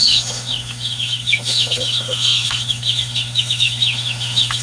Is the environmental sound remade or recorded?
remade